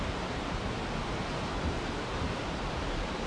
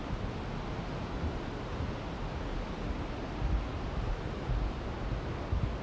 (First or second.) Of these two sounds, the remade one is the first